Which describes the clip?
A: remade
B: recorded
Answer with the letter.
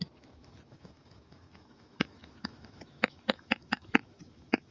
A